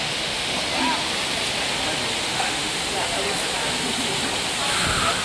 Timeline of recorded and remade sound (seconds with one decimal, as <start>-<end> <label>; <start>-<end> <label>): 0.0-0.5 remade; 0.5-2.2 recorded; 2.2-2.8 remade; 2.8-5.2 recorded